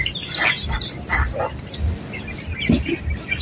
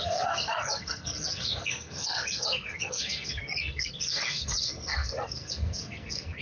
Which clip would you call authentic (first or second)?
first